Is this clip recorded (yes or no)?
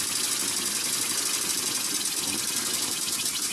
yes